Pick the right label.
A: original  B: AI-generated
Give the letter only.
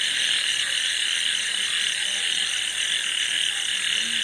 A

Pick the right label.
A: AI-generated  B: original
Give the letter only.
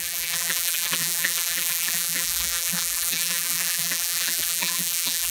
A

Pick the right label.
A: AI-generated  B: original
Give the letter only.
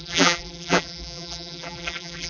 A